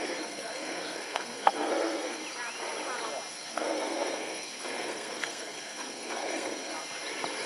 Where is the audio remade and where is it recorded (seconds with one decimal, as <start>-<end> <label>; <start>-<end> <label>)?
0.0-2.2 remade; 2.2-3.3 recorded; 3.3-6.7 remade; 6.7-7.5 recorded